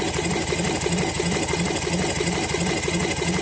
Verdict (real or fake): real